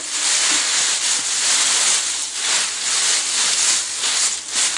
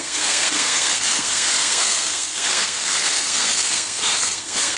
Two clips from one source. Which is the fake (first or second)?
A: second